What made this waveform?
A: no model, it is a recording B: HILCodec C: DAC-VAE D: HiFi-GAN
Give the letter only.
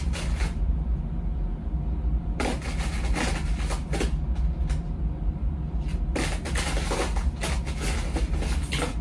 A